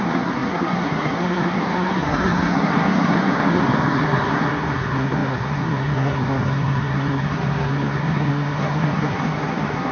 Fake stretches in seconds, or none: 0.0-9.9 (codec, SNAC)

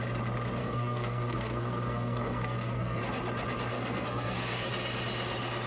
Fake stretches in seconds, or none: 0.6-3.0 (codec, SNAC); 3.7-4.7

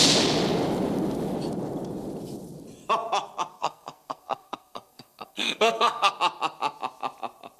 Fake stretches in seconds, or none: 3.5-6.1 (codec, SNAC)

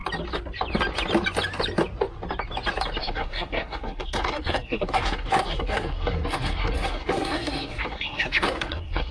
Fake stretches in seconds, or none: 3.0-9.1 (codec, SNAC)

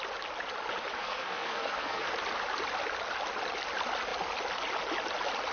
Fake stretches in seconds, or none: 1.0-2.1 (codec, SNAC)

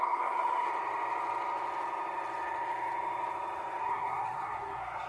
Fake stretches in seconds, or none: 0.0-0.7 (codec, SNAC); 3.8-5.1